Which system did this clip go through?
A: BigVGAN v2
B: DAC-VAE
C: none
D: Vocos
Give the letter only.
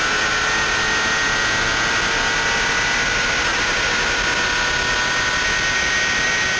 C